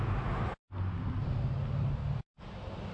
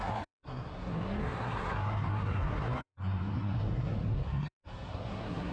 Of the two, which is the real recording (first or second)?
first